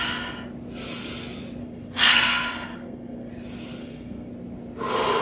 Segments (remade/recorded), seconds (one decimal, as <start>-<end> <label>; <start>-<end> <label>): 0.0-1.6 recorded; 1.6-3.3 remade; 3.3-3.8 recorded; 3.8-4.3 remade; 4.3-5.2 recorded